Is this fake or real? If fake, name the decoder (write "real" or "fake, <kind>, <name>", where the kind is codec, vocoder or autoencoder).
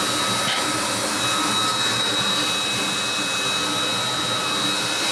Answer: real